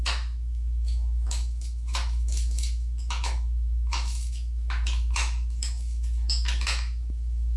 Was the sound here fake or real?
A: fake